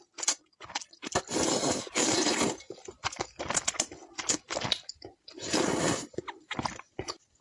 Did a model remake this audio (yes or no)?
no